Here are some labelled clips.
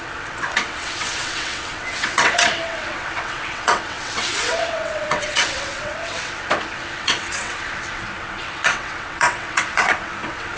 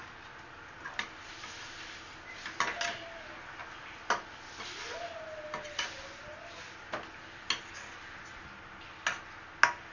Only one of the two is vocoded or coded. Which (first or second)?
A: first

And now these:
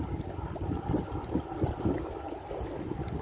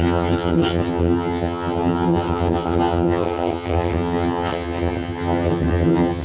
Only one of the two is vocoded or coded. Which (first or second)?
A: second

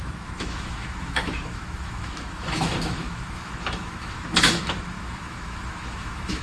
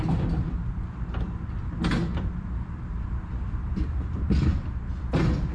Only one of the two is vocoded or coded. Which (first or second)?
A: first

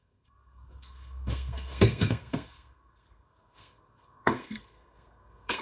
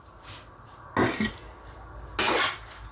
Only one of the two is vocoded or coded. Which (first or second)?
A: first